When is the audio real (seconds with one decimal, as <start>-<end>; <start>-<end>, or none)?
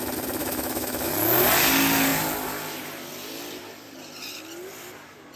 0.0-0.4; 1.1-5.4